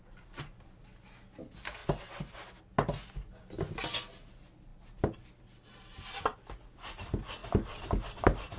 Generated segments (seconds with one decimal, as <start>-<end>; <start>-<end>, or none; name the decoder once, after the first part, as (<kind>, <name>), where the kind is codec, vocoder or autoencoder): none